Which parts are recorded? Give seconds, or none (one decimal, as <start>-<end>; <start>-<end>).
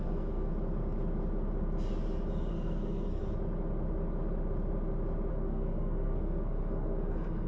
0.5-2.5; 3.2-5.3